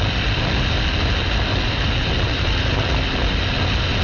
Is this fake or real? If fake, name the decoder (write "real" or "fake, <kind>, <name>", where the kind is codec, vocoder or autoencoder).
real